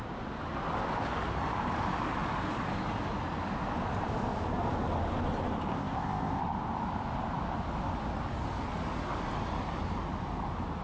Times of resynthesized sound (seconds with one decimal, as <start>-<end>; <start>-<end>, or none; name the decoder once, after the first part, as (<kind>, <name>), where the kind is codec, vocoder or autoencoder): 5.7-6.4 (codec, ZipCodec)